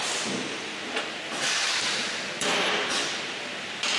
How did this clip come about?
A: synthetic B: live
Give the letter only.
B